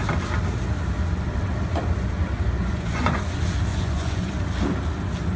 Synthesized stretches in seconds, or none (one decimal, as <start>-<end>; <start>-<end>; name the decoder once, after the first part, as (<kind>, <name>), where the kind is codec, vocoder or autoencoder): 2.6-3.2 (vocoder, Vocos); 3.7-4.3